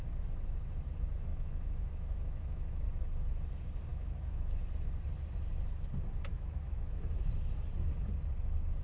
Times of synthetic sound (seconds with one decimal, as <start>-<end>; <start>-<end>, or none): 1.3-2.8; 3.9-4.6; 6.3-7.3